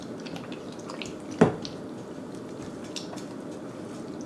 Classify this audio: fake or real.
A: real